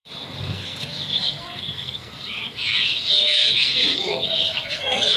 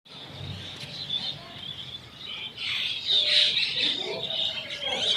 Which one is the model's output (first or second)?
first